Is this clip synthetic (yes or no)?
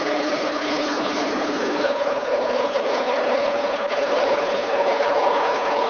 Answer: yes